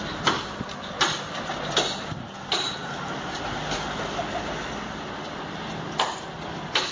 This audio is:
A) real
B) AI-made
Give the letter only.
A